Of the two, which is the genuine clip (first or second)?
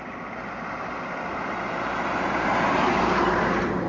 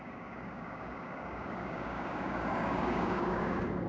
first